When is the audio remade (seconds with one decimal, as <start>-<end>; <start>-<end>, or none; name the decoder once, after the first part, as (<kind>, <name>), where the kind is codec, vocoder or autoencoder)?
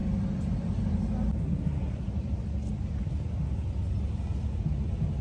none